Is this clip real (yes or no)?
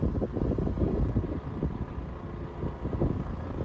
yes